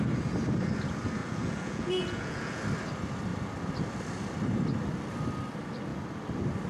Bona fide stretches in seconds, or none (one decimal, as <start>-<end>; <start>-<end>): 0.0-1.2; 2.6-6.7

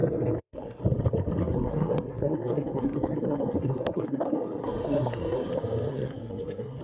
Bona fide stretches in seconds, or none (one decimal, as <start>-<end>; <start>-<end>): 0.8-1.4; 5.5-5.9